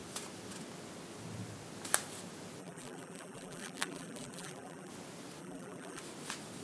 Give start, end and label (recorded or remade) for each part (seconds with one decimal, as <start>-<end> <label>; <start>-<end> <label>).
0.0-2.6 recorded; 2.6-4.9 remade; 4.9-5.4 recorded; 5.4-6.0 remade; 6.0-6.6 recorded

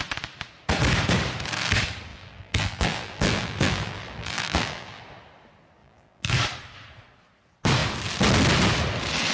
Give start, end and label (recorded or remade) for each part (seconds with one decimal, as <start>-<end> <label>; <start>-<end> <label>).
0.0-2.1 recorded; 2.1-5.0 remade; 5.0-5.8 recorded; 5.8-6.3 remade; 6.3-9.3 recorded